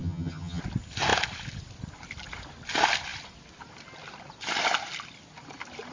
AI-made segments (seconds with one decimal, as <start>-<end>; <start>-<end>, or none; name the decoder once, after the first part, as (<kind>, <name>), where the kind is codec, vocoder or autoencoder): 0.0-0.6 (vocoder, HiFi-GAN)